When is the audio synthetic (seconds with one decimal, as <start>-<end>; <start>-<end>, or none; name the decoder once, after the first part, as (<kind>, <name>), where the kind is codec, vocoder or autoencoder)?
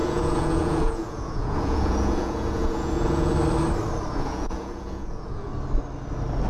0.0-3.3 (vocoder, Vocos); 4.1-5.5